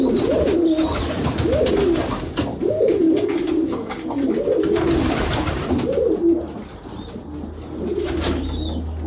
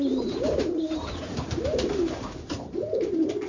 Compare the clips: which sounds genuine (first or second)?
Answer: first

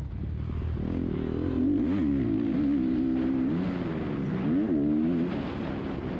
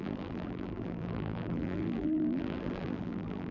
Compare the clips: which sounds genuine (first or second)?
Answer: first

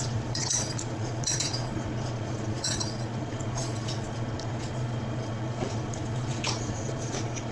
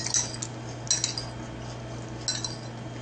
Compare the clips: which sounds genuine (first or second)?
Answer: second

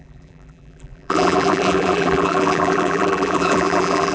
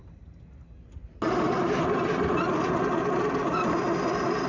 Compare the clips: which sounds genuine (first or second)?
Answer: second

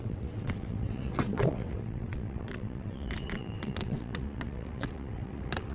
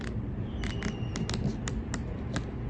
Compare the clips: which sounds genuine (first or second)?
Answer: second